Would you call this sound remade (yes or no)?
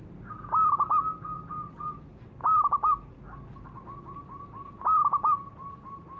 no